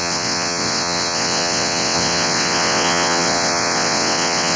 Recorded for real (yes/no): no